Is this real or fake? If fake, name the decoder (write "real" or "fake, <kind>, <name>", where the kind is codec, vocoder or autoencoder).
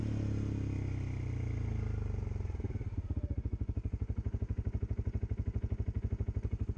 real